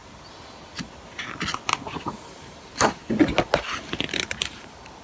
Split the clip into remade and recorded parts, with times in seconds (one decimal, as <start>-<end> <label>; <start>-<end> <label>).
0.0-2.2 recorded; 2.2-3.0 remade; 3.0-4.4 recorded; 4.4-5.0 remade